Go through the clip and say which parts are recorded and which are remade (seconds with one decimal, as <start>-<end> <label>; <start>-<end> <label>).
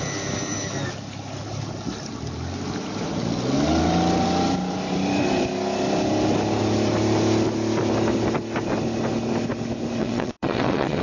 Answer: 0.0-10.0 recorded; 10.0-11.0 remade